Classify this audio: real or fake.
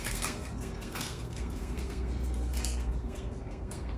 fake